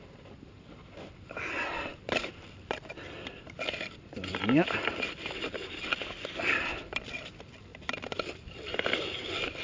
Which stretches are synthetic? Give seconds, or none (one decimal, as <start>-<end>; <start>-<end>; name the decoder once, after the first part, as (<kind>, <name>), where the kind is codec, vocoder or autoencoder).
none